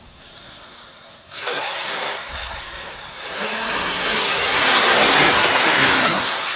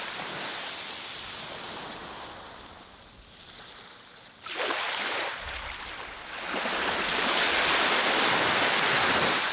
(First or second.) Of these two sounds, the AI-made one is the first